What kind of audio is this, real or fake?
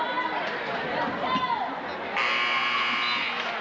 real